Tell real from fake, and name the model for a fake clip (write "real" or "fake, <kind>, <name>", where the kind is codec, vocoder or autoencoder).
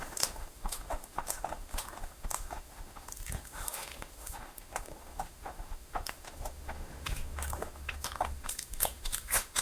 fake, autoencoder, DAC-VAE